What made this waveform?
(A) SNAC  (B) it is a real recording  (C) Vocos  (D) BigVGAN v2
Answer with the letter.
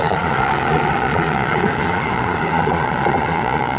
C